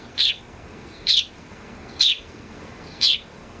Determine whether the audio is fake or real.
fake